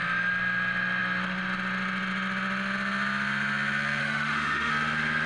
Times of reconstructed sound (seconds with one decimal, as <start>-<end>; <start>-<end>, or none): 4.0-4.7